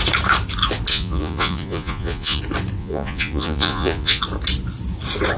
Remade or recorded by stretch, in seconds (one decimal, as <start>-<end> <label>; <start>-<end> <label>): 0.0-0.9 recorded; 0.9-2.4 remade; 2.4-2.8 recorded; 2.8-4.2 remade; 4.2-5.4 recorded

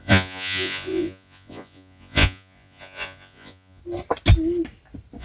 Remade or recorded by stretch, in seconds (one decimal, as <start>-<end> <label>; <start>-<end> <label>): 0.0-3.8 remade; 3.8-5.2 recorded

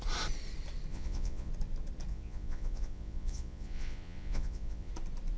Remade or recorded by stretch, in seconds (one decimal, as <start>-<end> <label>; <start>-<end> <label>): 0.0-0.9 recorded; 0.9-1.5 remade; 1.5-2.1 recorded; 2.1-4.9 remade; 4.9-5.4 recorded

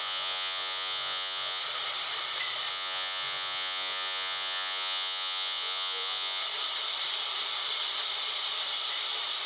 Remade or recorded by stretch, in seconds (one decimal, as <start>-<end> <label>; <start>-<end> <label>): 0.0-1.6 remade; 1.6-2.7 recorded; 2.7-6.4 remade; 6.4-9.5 recorded

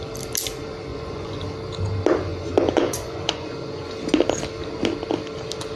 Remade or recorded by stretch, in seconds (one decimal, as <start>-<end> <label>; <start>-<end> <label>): 0.0-0.9 recorded; 0.9-1.4 remade; 1.4-2.3 recorded; 2.3-3.9 remade; 3.9-5.8 recorded

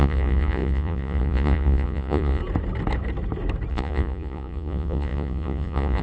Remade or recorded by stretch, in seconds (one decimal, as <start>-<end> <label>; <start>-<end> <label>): 0.0-2.4 remade; 2.4-3.7 recorded; 3.7-6.0 remade

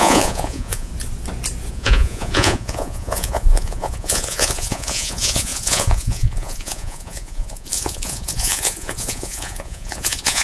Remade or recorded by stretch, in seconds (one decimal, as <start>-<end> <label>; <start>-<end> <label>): 0.0-0.9 remade; 0.9-1.7 recorded; 1.7-10.4 remade